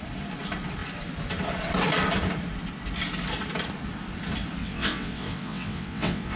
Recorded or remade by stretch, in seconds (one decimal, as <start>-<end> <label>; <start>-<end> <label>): 0.0-4.6 recorded; 4.6-6.4 remade

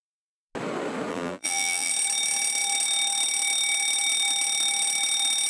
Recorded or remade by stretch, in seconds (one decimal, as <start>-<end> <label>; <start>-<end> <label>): 0.0-1.1 recorded; 1.1-1.9 remade; 1.9-5.5 recorded

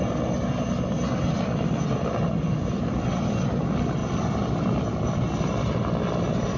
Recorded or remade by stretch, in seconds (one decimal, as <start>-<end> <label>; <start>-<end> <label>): 0.0-6.6 recorded

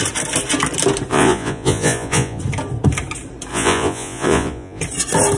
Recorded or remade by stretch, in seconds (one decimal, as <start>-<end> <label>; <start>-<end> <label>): 0.0-1.1 recorded; 1.1-2.4 remade; 2.4-3.5 recorded; 3.5-4.8 remade; 4.8-5.4 recorded

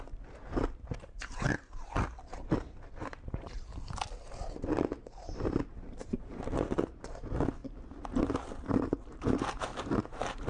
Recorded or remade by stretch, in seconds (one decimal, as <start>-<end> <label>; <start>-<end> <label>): 0.0-7.6 remade; 7.6-8.5 recorded; 8.5-10.5 remade